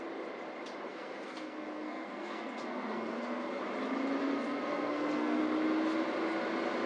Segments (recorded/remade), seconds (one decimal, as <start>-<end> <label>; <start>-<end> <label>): 0.0-0.9 recorded; 0.9-3.6 remade; 3.6-4.2 recorded; 4.2-5.4 remade; 5.4-6.9 recorded